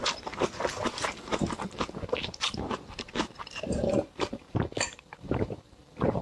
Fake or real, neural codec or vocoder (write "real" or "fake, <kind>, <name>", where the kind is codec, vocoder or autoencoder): fake, vocoder, BigVGAN v2